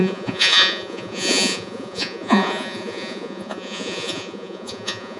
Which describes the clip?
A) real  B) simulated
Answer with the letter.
B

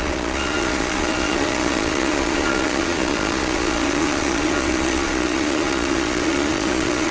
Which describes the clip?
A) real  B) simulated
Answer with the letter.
B